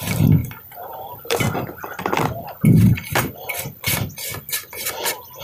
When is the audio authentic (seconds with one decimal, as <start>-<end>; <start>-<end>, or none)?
0.0-0.4; 3.6-5.4